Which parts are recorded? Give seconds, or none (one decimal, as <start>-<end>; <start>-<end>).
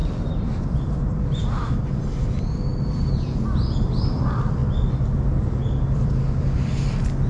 4.6-5.6